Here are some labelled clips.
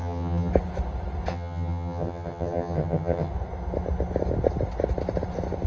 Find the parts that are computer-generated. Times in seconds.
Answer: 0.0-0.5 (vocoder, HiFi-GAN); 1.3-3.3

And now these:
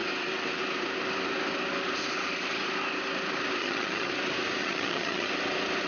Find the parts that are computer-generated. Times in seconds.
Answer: 3.6-4.1 (vocoder, HiFi-GAN); 4.6-5.3

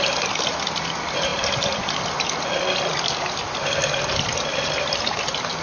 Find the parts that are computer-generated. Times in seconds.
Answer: none

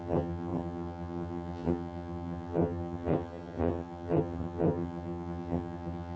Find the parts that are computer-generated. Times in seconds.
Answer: 0.0-6.2 (vocoder, HiFi-GAN)

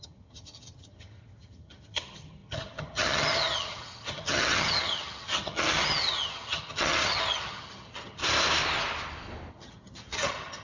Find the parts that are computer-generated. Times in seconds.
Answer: 0.0-8.2 (vocoder, HiFi-GAN); 9.5-10.6

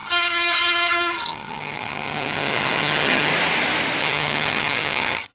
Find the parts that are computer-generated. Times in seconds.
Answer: 0.0-3.3 (vocoder, HiFi-GAN); 4.0-5.3